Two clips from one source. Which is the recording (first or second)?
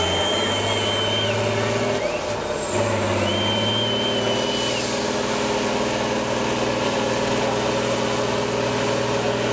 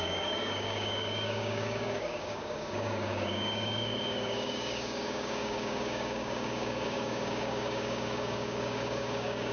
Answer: first